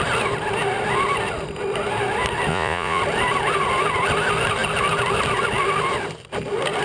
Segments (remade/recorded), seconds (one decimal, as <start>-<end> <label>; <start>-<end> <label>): 0.0-2.5 recorded; 2.5-3.0 remade; 3.0-6.8 recorded